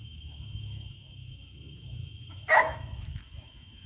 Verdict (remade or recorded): remade